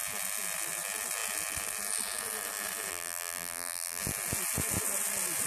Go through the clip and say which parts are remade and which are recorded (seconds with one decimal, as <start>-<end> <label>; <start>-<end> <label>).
0.0-2.9 recorded; 2.9-4.0 remade; 4.0-5.5 recorded